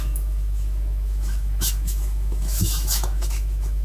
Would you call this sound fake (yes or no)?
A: yes